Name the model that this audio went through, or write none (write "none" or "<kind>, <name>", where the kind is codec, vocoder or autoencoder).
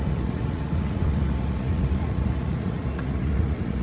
vocoder, Vocos